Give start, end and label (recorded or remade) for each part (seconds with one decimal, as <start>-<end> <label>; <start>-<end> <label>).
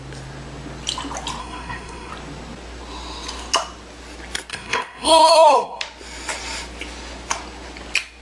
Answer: 0.0-1.4 recorded; 1.4-2.1 remade; 2.1-4.5 recorded; 4.5-5.8 remade; 5.8-8.2 recorded